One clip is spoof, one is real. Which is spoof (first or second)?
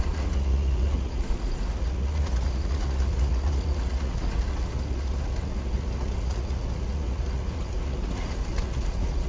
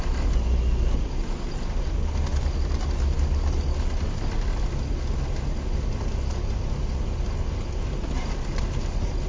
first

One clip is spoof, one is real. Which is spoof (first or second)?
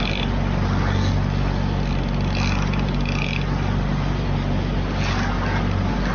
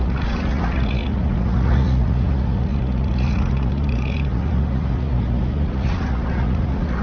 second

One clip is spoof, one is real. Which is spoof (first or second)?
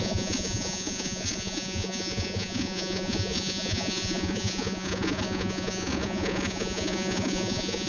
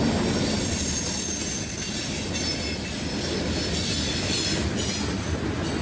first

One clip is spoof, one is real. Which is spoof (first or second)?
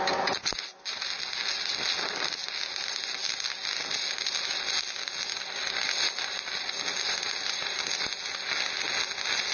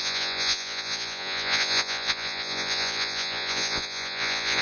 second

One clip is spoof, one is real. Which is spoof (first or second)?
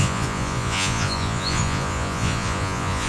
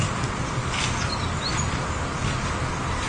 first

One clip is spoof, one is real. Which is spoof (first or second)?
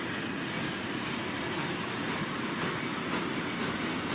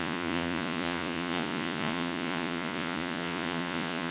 second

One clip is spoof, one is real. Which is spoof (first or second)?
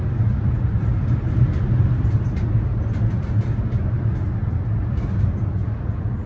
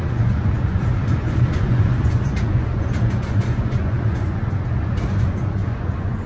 second